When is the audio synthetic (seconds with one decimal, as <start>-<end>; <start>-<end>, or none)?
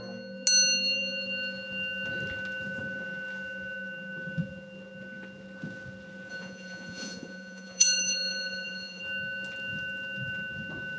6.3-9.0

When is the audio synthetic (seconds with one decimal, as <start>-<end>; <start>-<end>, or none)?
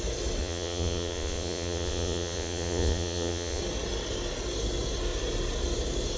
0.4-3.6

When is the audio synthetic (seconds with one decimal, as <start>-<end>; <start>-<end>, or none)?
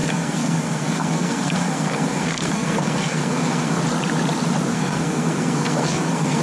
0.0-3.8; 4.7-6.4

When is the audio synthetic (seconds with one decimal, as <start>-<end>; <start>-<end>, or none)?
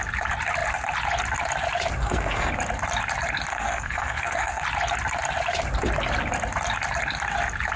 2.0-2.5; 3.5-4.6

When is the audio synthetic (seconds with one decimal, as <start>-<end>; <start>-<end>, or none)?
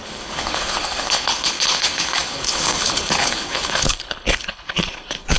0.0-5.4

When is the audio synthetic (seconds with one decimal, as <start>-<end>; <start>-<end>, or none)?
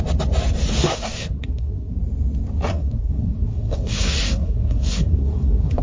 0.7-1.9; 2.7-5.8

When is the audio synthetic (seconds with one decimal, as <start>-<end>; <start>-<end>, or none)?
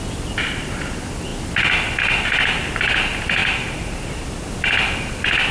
3.4-4.5